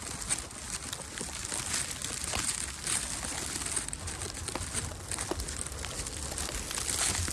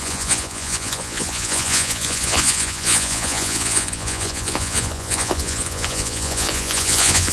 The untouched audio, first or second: first